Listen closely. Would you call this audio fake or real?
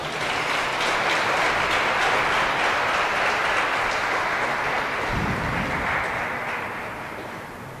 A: real